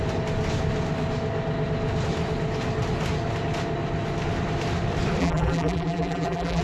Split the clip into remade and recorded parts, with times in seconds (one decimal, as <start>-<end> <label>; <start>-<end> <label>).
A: 0.0-5.2 recorded; 5.2-6.6 remade